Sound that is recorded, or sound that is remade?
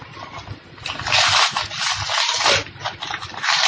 recorded